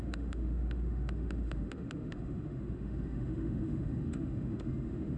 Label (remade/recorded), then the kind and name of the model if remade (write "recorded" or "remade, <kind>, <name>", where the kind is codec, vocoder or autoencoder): remade, autoencoder, DAC-VAE